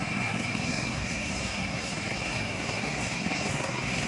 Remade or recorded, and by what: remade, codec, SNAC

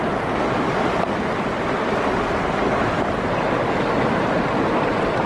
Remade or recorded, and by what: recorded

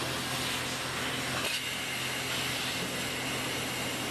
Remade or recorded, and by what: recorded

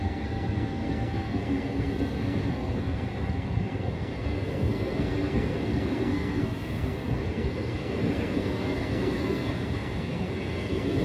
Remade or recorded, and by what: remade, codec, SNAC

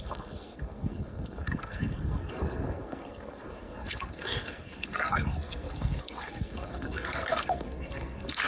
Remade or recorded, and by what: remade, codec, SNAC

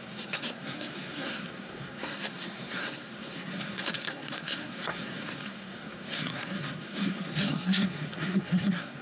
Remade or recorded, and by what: remade, codec, SNAC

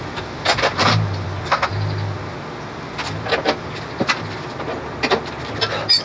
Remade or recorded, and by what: recorded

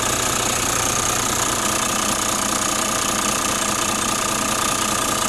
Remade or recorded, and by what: recorded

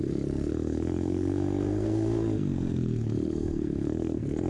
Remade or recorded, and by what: remade, codec, SNAC